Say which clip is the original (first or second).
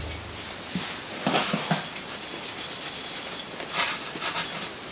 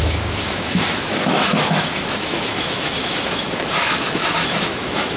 first